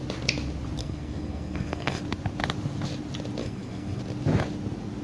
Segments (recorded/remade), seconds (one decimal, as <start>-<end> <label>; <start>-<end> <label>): 0.0-0.8 recorded; 0.8-2.0 remade; 2.0-3.4 recorded; 3.4-4.0 remade; 4.0-5.0 recorded